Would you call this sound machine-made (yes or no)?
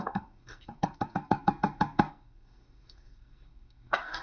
yes